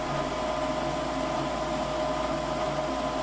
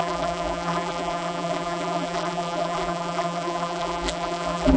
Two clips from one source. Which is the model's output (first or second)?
second